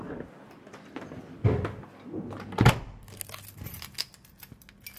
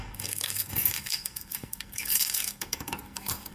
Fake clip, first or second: second